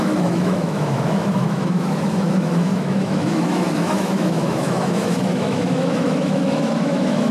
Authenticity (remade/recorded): remade